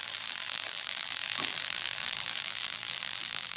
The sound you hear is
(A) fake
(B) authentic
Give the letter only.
A